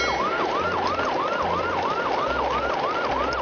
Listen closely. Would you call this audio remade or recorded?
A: recorded